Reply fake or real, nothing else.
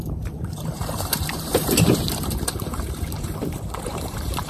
fake